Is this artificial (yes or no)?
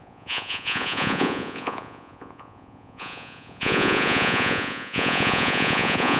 yes